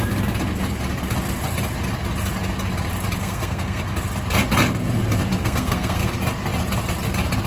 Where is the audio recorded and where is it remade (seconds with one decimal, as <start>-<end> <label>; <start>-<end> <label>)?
0.0-3.2 recorded; 3.2-3.8 remade; 3.8-5.4 recorded; 5.4-6.1 remade; 6.1-7.5 recorded